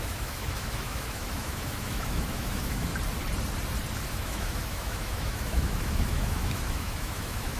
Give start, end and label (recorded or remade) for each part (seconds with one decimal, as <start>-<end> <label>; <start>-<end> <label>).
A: 0.0-2.9 remade; 2.9-4.1 recorded; 4.1-7.6 remade

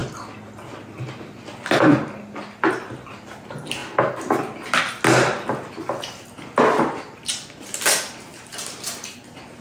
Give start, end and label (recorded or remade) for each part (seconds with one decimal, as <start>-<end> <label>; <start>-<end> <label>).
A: 0.0-9.6 recorded

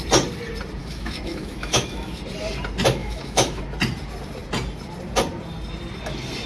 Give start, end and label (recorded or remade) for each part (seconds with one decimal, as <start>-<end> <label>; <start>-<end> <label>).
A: 0.0-0.8 recorded; 0.8-2.2 remade; 2.2-3.0 recorded; 3.0-3.6 remade; 3.6-6.5 recorded

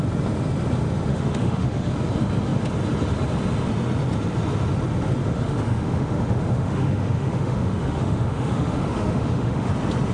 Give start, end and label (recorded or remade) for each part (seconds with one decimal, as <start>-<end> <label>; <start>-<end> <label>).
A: 0.0-1.1 recorded; 1.1-1.9 remade; 1.9-5.2 recorded; 5.2-9.7 remade; 9.7-10.1 recorded

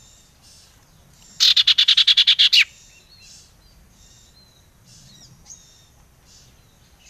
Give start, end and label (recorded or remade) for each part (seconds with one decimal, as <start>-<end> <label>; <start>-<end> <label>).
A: 0.0-7.1 recorded